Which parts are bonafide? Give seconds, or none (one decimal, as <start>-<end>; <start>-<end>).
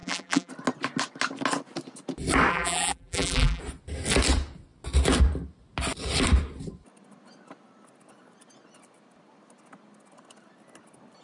0.5-2.5; 3.6-11.2